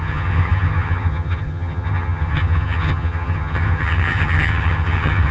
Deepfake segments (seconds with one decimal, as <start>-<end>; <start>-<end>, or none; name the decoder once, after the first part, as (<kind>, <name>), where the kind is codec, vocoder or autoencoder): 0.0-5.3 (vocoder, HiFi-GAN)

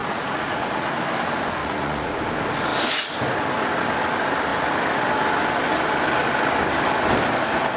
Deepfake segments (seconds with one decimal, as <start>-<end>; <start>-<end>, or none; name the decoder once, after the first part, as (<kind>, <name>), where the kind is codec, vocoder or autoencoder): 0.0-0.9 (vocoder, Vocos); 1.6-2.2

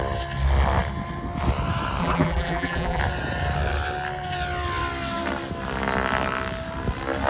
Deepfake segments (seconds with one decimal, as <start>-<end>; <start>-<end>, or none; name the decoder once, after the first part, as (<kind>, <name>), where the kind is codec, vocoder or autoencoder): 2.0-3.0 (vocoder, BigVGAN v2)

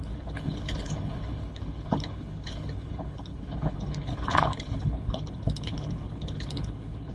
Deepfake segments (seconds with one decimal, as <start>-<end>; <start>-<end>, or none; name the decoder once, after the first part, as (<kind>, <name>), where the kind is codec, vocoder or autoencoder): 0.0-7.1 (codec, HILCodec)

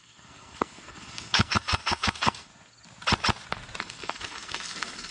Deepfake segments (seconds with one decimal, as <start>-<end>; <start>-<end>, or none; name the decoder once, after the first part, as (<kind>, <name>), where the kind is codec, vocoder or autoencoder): 0.0-2.5 (codec, SNAC); 3.8-5.1